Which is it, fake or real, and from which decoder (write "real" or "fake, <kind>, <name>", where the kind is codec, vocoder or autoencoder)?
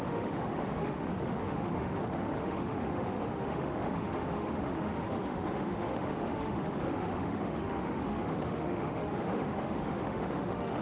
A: fake, autoencoder, DAC-VAE